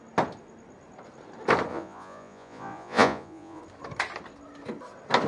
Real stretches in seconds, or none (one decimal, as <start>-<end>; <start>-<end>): 0.0-1.7; 3.6-5.3